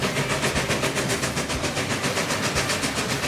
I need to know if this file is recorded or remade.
recorded